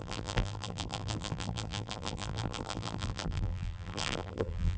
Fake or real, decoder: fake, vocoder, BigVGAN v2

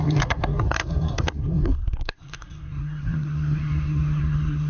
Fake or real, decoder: fake, codec, SNAC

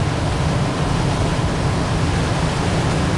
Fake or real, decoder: real